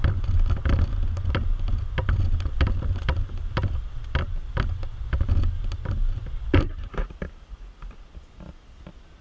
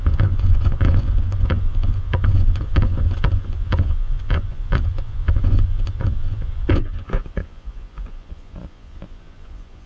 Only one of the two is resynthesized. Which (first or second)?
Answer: second